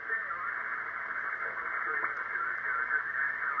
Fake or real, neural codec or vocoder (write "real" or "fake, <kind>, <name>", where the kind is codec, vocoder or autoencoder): real